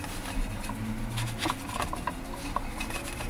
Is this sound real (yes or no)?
yes